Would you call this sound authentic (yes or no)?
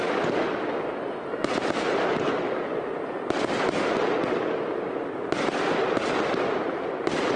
yes